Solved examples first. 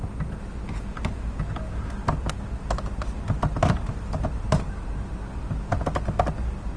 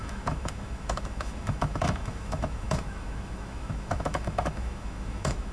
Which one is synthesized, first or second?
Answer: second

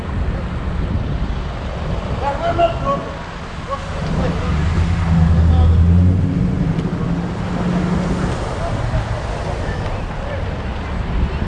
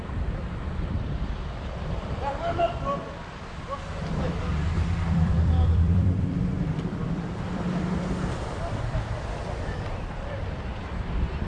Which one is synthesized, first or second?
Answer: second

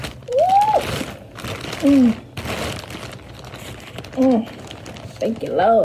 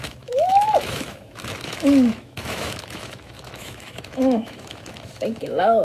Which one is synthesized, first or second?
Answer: second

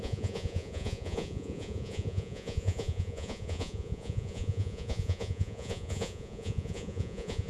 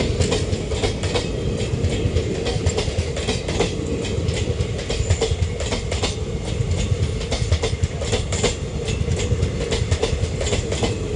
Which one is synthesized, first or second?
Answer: first